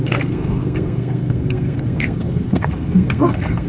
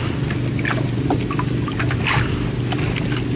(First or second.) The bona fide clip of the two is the second